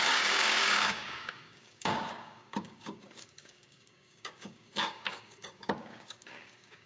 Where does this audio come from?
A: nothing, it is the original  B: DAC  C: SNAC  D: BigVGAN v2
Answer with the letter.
B